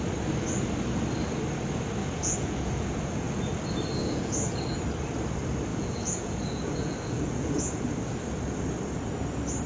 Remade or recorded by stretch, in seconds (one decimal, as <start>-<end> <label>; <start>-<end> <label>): 0.0-2.0 recorded; 2.0-3.5 remade; 3.5-4.0 recorded; 4.0-4.9 remade; 4.9-5.7 recorded; 5.7-7.8 remade; 7.8-9.7 recorded